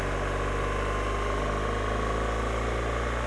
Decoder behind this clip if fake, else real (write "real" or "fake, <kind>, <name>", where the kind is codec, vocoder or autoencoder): real